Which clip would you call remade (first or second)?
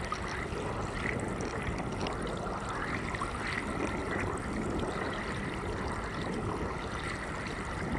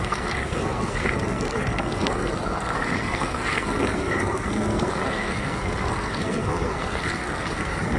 second